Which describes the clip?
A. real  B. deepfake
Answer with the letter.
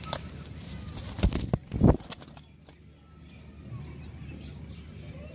A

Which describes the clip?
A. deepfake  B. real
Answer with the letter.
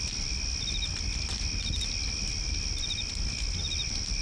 B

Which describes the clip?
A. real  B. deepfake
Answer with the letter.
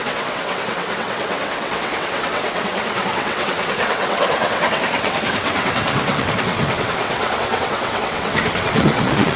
B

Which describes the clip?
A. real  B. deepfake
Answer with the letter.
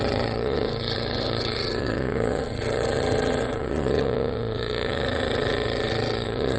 B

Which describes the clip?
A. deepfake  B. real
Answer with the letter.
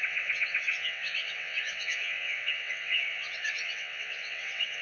A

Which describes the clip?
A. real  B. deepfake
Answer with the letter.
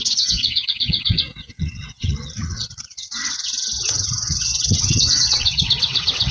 B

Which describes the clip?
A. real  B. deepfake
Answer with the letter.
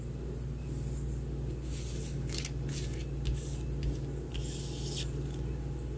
A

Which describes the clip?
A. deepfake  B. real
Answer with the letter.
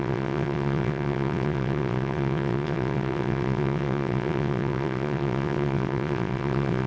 A